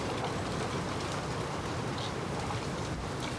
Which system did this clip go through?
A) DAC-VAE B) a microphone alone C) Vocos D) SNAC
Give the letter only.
B